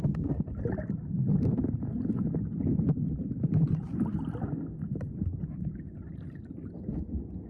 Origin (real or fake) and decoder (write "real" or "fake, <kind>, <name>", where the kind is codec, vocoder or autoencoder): real